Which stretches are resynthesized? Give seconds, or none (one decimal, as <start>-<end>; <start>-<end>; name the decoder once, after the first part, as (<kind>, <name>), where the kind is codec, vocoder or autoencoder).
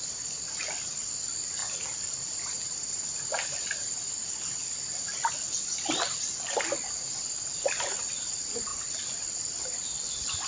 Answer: none